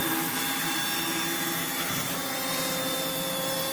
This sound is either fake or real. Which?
fake